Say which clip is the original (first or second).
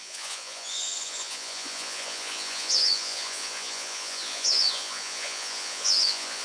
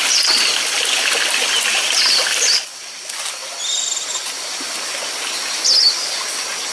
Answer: second